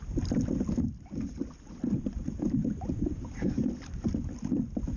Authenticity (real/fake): real